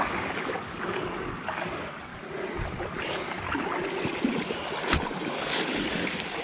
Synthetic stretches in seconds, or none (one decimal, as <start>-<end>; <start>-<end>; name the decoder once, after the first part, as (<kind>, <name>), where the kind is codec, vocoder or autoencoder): 0.0-2.1 (codec, DAC); 5.3-6.4